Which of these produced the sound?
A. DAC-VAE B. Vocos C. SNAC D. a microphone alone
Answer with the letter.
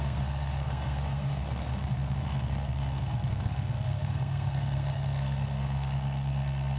C